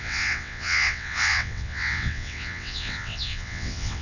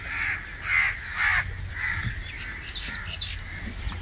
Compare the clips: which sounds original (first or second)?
second